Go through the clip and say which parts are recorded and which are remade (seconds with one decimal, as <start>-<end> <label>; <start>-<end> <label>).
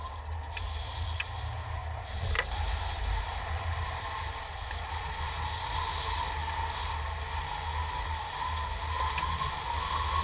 0.0-10.2 recorded